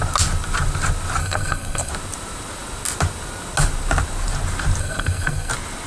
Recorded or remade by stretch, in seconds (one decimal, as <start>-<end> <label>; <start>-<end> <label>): 0.0-1.2 recorded; 1.2-1.9 remade; 1.9-4.8 recorded; 4.8-5.5 remade; 5.5-5.9 recorded

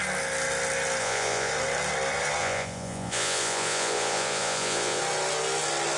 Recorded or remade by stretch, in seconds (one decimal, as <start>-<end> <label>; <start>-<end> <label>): 0.0-1.0 recorded; 1.0-1.5 remade; 1.5-2.4 recorded; 2.4-5.0 remade; 5.0-6.0 recorded

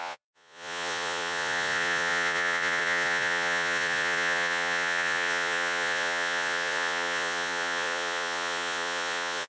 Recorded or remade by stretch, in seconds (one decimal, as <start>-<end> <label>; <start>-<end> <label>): 0.0-9.5 remade

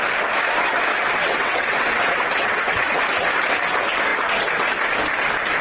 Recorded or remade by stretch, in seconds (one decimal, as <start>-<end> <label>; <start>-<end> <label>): 0.0-0.9 recorded; 0.9-3.0 remade; 3.0-5.6 recorded

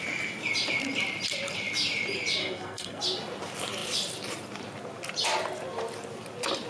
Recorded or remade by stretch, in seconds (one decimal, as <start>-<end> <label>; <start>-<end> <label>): 0.0-2.4 recorded; 2.4-3.0 remade; 3.0-6.7 recorded